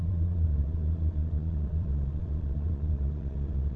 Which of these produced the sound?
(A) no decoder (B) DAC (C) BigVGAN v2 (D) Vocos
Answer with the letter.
D